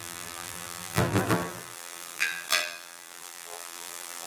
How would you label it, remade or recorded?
remade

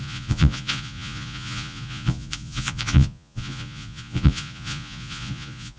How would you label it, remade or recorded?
remade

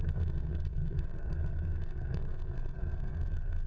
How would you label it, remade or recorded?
remade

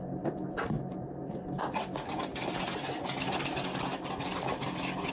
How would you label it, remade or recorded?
recorded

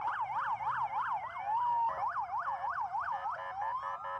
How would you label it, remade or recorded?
recorded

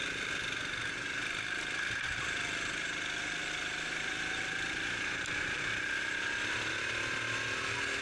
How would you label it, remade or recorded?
recorded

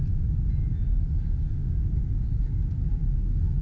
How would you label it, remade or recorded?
recorded